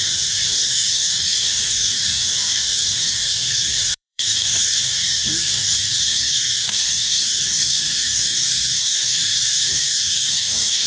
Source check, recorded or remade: remade